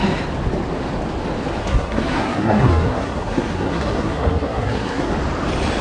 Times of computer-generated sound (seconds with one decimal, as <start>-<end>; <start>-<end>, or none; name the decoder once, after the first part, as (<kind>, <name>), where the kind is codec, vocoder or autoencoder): 1.6-5.1 (codec, SNAC)